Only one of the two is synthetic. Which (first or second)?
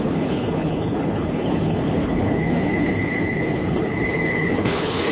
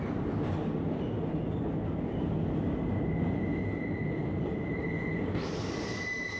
first